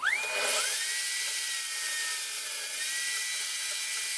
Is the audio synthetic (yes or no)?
no